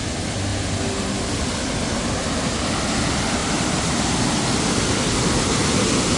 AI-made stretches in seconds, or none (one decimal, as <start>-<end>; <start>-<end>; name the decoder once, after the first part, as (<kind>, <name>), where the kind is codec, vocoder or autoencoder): none